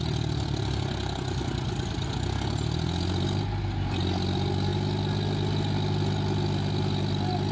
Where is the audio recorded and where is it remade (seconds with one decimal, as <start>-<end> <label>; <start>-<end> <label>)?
0.0-7.5 recorded